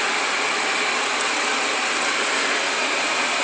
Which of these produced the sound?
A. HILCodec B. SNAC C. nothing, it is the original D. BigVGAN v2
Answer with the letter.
C